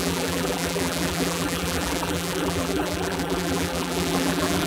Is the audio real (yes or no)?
no